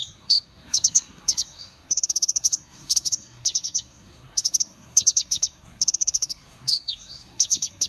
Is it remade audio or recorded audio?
remade